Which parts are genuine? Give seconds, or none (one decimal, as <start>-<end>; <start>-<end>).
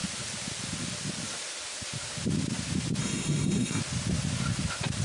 0.0-3.0; 3.8-5.0